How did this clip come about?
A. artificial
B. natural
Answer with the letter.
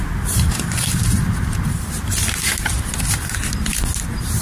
A